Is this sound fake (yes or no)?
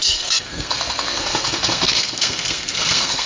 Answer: yes